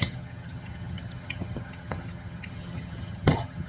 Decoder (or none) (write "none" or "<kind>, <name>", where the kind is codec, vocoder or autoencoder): vocoder, HiFi-GAN